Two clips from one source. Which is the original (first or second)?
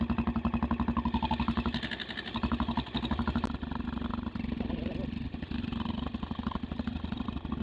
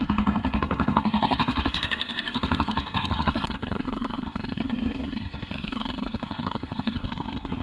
first